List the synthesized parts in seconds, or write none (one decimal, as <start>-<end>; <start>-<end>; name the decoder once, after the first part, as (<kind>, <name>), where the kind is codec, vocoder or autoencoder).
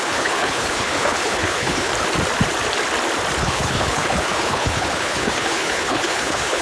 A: 0.0-1.9 (codec, HILCodec); 3.4-6.6